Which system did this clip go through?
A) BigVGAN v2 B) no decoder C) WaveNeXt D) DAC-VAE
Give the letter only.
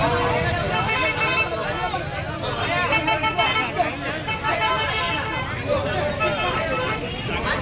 B